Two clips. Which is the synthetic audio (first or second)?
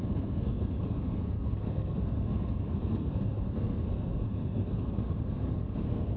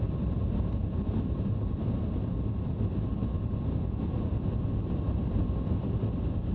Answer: first